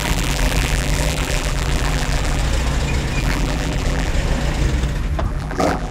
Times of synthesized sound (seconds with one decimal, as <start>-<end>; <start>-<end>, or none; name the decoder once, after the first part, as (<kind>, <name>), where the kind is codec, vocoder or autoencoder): 0.0-2.4 (vocoder, BigVGAN v2); 3.2-4.1; 5.3-5.9